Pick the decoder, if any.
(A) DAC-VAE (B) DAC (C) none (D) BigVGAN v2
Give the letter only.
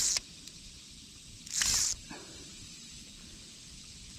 C